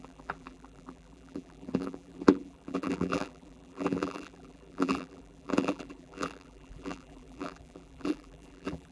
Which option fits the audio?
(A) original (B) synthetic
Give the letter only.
B